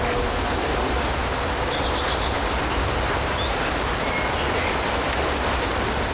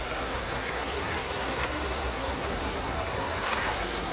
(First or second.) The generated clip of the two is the second